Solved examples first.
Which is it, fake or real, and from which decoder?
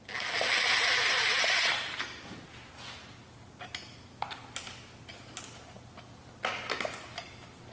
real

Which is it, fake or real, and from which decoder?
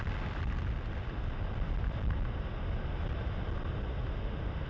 real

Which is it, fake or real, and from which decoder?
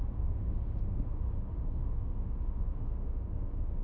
fake, autoencoder, DAC-VAE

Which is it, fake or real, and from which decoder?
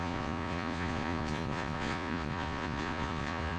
fake, vocoder, Vocos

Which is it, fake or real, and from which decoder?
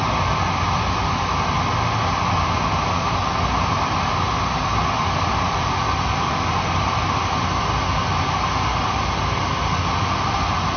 real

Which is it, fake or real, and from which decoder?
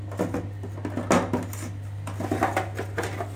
real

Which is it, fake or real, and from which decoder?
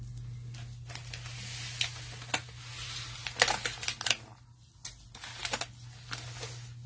real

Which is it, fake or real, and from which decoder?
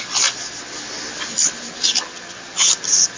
real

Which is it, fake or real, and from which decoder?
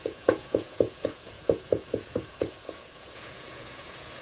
fake, vocoder, Vocos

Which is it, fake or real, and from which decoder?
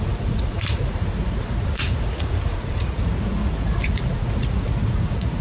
fake, vocoder, Vocos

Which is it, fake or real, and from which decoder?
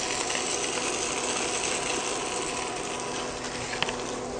real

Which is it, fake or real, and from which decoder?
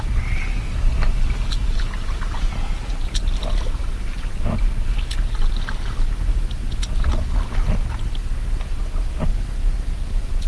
real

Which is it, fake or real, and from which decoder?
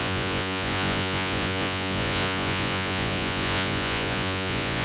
fake, vocoder, Vocos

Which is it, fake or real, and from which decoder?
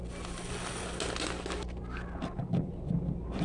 real